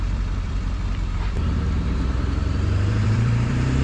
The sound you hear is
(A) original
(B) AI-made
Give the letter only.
B